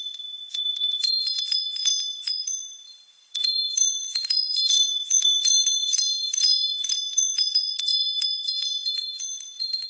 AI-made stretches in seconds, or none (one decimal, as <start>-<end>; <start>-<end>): 0.0-9.9